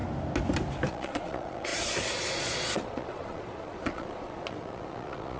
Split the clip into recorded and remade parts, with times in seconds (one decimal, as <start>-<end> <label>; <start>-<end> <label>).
0.0-0.9 recorded; 0.9-5.4 remade